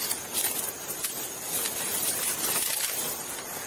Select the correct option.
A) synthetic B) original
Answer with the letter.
B